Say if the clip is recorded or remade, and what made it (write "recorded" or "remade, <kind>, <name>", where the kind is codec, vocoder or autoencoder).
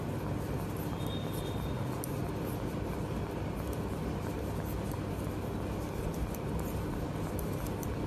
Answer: recorded